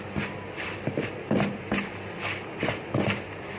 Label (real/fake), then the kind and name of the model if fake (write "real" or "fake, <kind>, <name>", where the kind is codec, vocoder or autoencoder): real